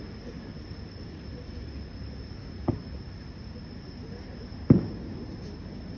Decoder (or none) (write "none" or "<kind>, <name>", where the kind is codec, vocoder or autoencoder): none